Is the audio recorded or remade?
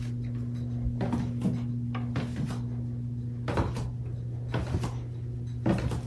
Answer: recorded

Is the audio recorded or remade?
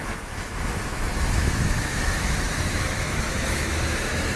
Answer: remade